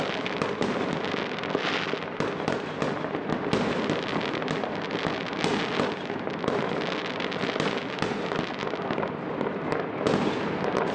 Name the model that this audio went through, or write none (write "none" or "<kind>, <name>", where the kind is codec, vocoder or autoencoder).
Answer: none